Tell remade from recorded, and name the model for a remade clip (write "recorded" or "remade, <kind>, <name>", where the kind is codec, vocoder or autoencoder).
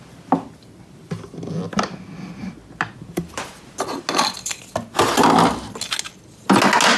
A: recorded